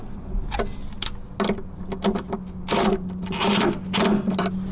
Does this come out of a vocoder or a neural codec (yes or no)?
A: no